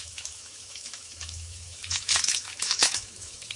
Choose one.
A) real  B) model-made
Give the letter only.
B